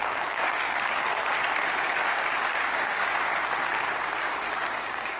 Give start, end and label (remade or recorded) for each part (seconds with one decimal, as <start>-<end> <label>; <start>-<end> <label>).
0.0-1.2 remade; 1.2-1.8 recorded; 1.8-3.4 remade; 3.4-4.2 recorded; 4.2-5.2 remade